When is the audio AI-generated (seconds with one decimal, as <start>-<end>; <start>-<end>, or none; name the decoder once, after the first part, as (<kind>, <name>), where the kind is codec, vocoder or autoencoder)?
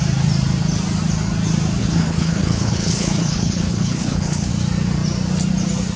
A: 1.8-4.5 (codec, HILCodec)